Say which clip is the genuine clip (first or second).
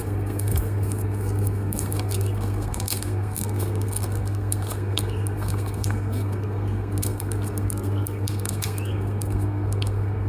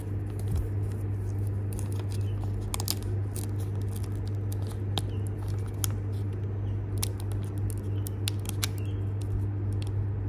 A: second